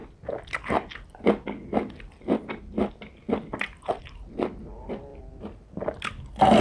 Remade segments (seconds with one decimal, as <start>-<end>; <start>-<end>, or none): none